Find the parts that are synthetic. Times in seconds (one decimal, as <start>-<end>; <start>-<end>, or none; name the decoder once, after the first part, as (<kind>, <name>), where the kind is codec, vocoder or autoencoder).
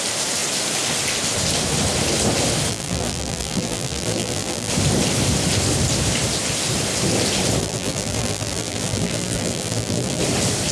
2.7-4.7 (vocoder, BigVGAN v2); 7.6-10.2